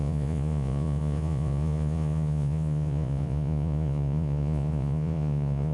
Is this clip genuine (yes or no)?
no